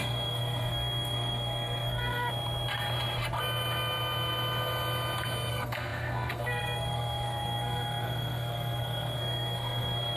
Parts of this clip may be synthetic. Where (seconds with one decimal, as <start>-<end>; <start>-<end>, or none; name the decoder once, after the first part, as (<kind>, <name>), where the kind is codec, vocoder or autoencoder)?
0.0-2.3 (codec, SNAC); 5.5-10.2

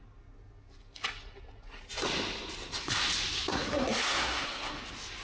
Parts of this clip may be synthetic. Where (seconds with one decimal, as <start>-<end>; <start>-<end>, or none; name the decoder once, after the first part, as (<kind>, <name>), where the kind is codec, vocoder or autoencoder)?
3.5-4.8 (codec, SNAC)